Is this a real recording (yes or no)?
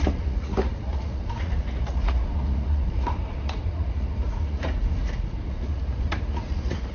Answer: no